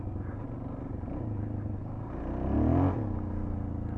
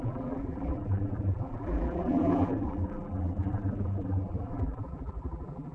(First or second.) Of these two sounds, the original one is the first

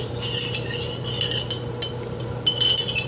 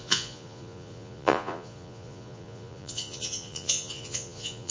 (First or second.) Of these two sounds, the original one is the first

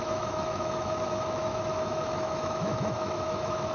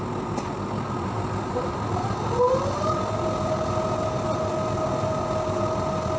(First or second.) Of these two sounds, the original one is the second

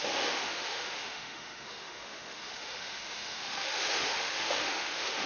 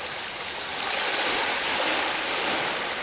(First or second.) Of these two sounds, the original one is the second